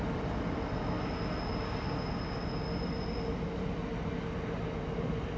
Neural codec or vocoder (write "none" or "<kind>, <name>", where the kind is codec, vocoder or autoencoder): none